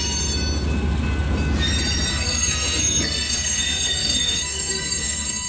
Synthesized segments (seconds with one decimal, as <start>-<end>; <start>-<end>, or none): 2.1-5.5